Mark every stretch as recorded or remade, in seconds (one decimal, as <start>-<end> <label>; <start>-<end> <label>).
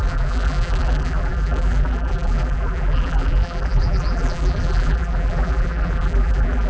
0.0-6.7 remade